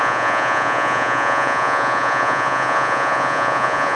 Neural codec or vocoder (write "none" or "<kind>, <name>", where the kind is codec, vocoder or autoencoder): vocoder, Vocos